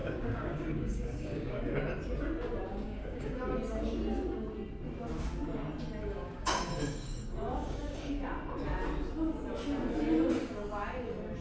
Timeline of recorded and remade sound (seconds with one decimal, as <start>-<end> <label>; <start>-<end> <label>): 0.0-1.6 remade; 1.6-2.7 recorded; 2.7-3.4 remade; 3.4-6.0 recorded; 6.0-8.3 remade; 8.3-11.4 recorded